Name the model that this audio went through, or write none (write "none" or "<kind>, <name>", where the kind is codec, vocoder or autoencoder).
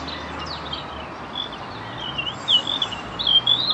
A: none